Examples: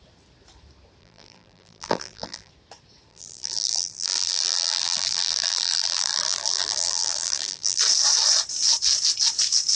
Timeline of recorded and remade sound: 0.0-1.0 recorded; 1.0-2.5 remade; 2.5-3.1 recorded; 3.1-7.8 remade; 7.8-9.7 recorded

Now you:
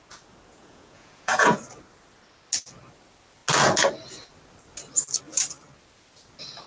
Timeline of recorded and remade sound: 0.0-0.5 recorded; 0.5-1.6 remade; 1.6-6.7 recorded

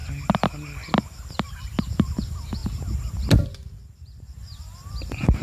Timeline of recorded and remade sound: 0.0-5.4 recorded

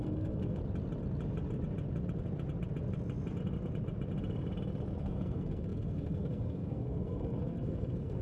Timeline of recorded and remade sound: 0.0-0.6 remade; 0.6-5.0 recorded; 5.0-8.2 remade

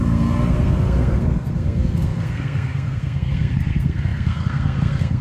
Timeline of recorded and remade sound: 0.0-5.2 remade

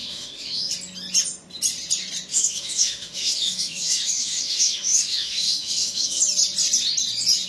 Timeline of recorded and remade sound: 0.0-0.7 remade; 0.7-2.3 recorded; 2.3-6.2 remade; 6.2-7.5 recorded

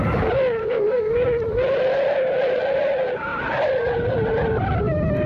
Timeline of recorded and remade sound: 0.0-0.6 recorded; 0.6-1.1 remade; 1.1-5.3 recorded

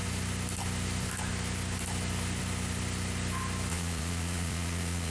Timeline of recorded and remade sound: 0.0-3.7 recorded; 3.7-5.1 remade